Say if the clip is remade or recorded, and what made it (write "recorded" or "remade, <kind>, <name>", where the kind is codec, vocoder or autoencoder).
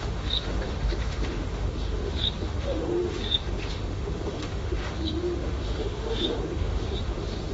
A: remade, autoencoder, DAC-VAE